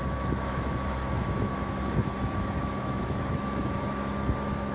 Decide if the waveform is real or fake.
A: fake